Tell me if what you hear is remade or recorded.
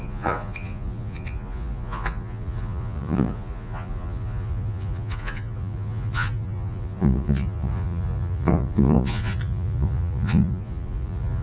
remade